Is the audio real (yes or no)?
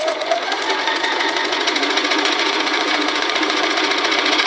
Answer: no